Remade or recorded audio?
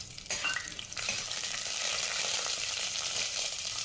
remade